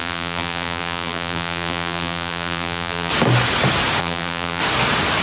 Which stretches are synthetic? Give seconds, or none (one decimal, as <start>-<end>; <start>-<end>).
0.0-3.1; 4.0-4.6